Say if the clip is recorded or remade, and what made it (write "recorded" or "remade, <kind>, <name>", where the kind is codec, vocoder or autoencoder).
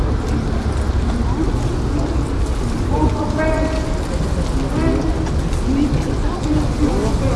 recorded